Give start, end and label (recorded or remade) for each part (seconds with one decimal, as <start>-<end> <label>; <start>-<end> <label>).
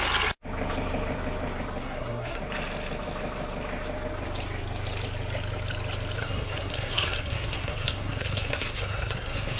0.0-1.8 recorded; 1.8-2.4 remade; 2.4-6.2 recorded; 6.2-9.6 remade